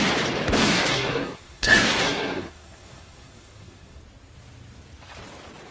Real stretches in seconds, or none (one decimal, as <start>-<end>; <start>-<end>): 0.0-0.6; 4.0-5.7